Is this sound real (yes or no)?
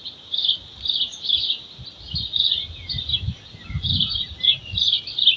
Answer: yes